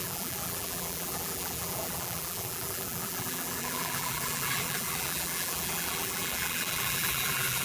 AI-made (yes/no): yes